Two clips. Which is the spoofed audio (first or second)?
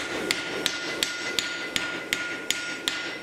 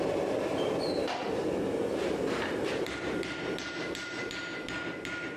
second